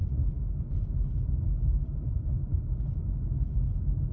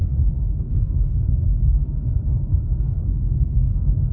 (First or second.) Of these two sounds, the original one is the first